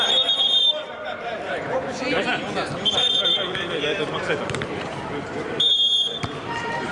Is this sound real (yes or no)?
no